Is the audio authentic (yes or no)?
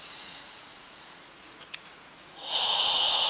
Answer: no